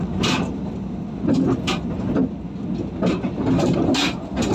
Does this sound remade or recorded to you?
recorded